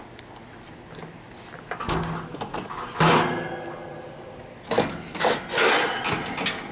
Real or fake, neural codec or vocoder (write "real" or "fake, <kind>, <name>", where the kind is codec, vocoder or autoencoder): real